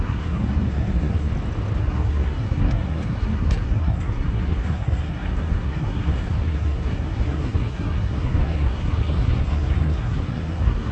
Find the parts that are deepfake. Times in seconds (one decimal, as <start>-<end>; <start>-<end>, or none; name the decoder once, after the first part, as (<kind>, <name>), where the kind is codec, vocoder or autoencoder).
0.0-1.3 (codec, SNAC); 1.8-10.9